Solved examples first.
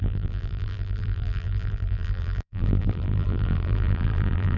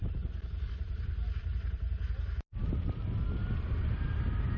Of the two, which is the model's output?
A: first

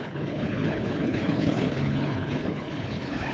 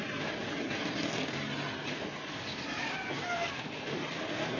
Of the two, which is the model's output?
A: first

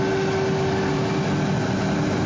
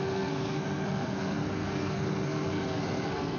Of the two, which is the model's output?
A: second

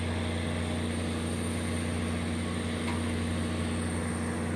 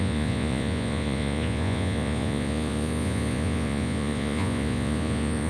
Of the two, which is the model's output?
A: second